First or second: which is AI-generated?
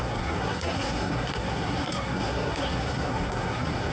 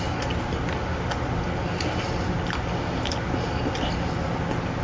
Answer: first